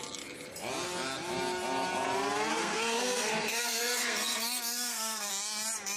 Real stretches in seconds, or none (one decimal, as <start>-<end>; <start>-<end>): 0.0-2.5; 5.3-6.0